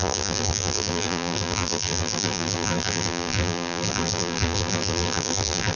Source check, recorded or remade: remade